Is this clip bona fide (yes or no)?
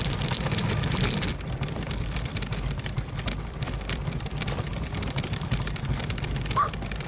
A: no